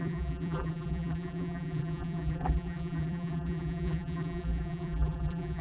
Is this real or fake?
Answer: fake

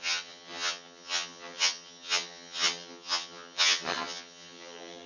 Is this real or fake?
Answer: fake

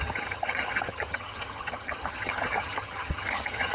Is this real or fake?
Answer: fake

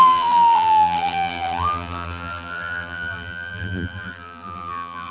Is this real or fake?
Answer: fake